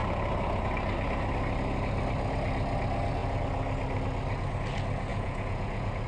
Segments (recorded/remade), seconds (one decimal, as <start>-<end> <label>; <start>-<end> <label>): 0.0-5.1 recorded; 5.1-6.1 remade